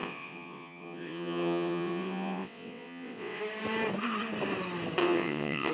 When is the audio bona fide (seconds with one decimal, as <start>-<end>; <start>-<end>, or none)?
3.4-5.0